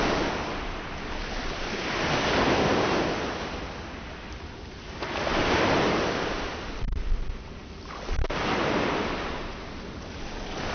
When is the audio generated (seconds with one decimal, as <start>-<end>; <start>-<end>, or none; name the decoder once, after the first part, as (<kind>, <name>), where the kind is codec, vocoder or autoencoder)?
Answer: none